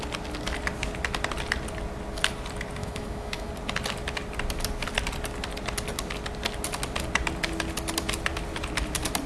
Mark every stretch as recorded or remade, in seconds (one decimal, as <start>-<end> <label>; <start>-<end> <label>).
0.0-2.8 recorded; 2.8-3.5 remade; 3.5-9.3 recorded